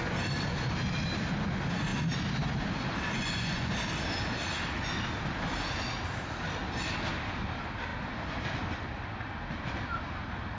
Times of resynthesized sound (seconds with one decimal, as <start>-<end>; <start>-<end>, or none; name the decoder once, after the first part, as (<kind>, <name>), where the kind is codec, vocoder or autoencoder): 3.2-3.7 (vocoder, Vocos)